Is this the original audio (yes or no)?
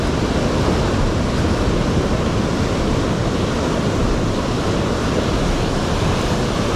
yes